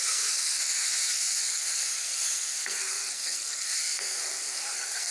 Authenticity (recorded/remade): remade